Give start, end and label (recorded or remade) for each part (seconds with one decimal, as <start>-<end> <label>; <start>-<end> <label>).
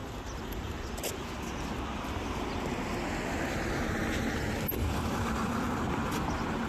0.0-0.9 remade; 0.9-6.7 recorded